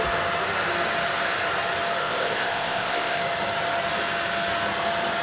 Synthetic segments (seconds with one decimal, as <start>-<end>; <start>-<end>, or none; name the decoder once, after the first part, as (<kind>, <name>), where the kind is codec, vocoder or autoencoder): 2.0-3.2 (codec, ZipCodec)